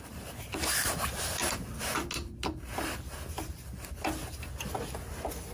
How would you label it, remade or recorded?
recorded